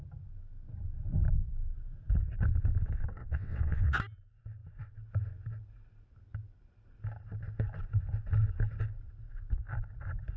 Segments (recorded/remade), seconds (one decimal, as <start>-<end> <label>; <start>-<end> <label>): 0.0-3.2 recorded; 3.2-4.0 remade; 4.0-10.4 recorded